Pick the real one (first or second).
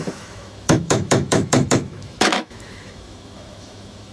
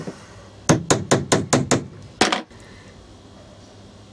second